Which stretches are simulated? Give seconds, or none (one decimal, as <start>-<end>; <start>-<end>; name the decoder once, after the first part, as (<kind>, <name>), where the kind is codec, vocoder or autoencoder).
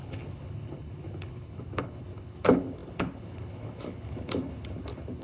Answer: 0.0-5.2 (codec, HILCodec)